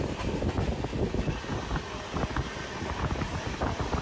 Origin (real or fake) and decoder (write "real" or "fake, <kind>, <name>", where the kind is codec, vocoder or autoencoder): real